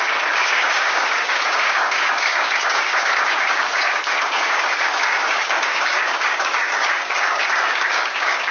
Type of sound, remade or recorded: remade